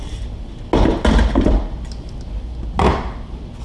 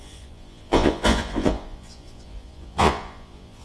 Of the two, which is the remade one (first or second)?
second